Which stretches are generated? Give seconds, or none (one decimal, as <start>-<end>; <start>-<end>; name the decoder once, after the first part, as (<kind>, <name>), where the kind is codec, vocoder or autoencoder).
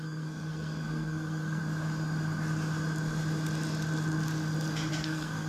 0.0-1.6 (codec, SNAC); 4.9-5.5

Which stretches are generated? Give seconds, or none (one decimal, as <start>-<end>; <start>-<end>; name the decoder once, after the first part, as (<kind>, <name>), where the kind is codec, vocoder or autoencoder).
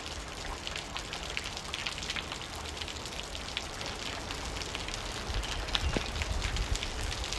none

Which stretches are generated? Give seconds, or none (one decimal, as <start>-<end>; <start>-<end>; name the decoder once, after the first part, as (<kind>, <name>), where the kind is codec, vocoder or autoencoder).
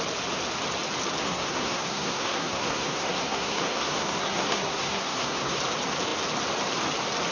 1.2-5.6 (codec, SNAC)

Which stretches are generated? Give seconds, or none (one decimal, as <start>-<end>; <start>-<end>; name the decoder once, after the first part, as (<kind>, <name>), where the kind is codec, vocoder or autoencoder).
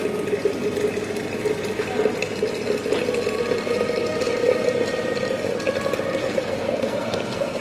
6.2-7.6 (codec, SNAC)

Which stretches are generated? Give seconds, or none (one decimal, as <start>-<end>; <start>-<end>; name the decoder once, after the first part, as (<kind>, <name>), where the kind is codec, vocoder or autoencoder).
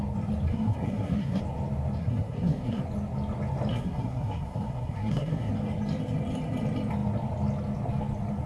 0.5-1.4 (codec, SNAC); 2.0-2.8; 3.7-5.5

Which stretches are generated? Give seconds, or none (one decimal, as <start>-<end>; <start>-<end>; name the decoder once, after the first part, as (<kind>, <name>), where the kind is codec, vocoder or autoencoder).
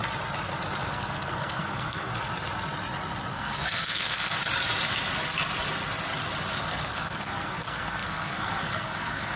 0.9-2.1 (codec, SNAC); 3.3-4.4; 6.6-9.4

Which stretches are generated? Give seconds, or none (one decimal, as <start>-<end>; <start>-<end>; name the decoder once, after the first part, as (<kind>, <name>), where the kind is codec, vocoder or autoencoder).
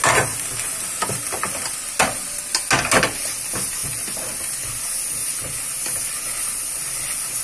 none